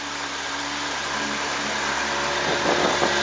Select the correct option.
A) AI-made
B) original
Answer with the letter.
B